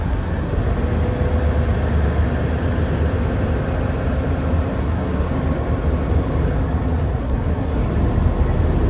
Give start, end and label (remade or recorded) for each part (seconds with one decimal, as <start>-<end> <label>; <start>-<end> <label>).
0.0-0.6 remade; 0.6-4.8 recorded; 4.8-5.3 remade; 5.3-7.2 recorded; 7.2-7.8 remade; 7.8-8.9 recorded

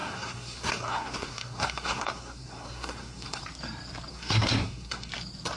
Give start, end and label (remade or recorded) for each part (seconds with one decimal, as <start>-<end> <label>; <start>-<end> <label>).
0.0-3.4 remade; 3.4-4.1 recorded; 4.1-5.1 remade; 5.1-5.6 recorded